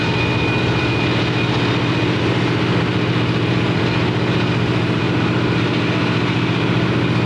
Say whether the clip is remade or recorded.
recorded